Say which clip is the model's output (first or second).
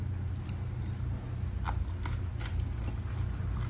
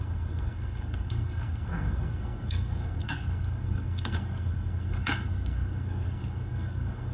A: second